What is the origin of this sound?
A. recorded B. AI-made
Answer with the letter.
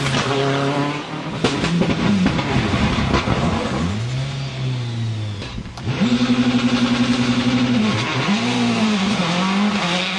A